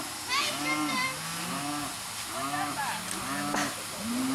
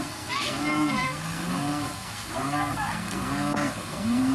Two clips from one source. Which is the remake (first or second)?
second